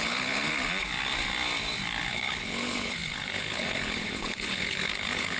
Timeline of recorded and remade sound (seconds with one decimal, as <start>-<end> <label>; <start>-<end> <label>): 0.0-0.5 remade; 0.5-2.1 recorded; 2.1-5.4 remade